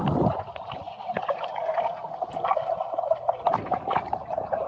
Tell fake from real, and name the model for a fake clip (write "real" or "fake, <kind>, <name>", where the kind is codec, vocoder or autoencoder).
real